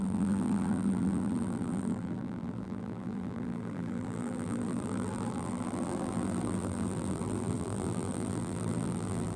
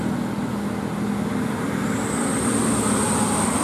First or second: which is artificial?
first